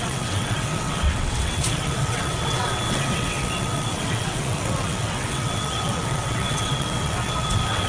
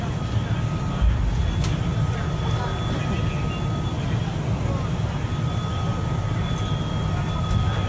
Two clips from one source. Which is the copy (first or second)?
first